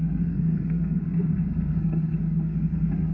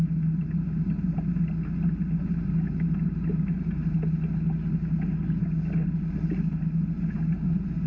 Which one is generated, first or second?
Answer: first